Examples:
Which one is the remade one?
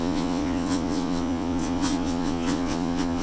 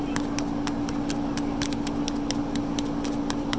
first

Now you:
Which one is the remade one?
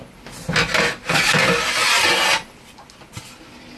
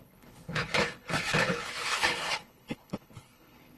second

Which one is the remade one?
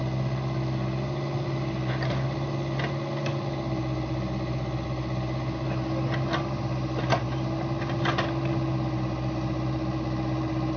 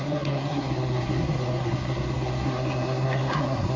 second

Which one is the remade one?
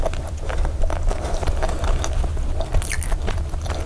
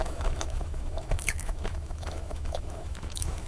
second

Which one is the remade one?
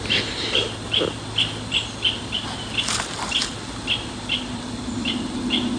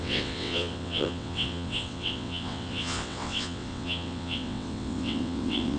second